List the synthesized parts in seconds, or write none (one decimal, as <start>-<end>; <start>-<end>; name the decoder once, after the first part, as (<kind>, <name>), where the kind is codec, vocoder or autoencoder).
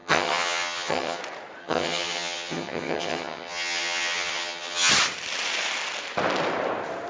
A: 0.0-1.2 (vocoder, HiFi-GAN); 1.6-4.9